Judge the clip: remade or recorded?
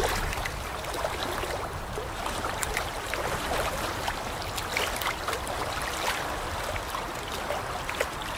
remade